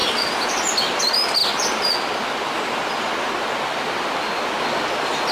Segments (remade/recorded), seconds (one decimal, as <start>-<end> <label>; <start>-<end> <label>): 0.0-5.3 recorded